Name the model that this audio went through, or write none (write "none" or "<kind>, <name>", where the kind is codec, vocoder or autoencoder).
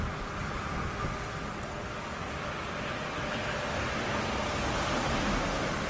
none